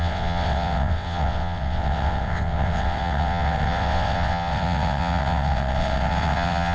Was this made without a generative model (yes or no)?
no